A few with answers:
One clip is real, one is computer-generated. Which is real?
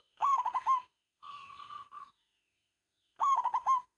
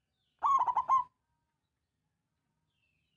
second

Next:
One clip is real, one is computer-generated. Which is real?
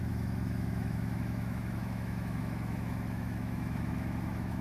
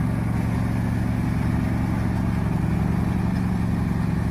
second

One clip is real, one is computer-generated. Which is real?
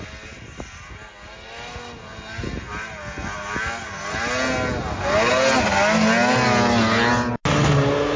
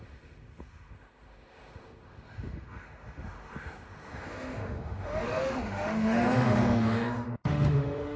first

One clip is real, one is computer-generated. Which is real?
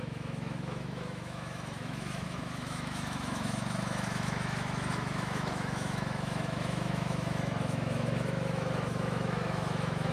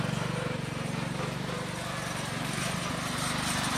second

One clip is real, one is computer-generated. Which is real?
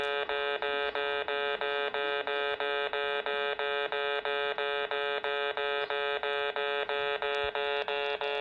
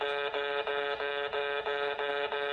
first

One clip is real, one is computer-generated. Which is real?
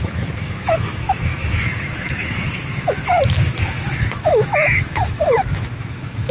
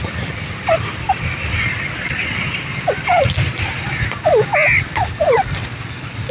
second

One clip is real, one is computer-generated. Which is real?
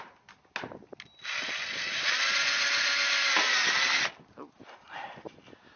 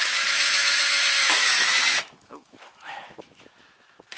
first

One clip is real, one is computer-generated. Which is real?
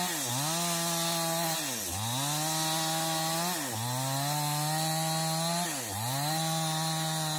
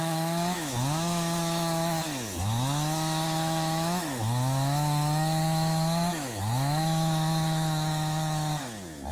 first